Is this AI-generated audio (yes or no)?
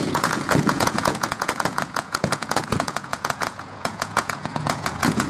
yes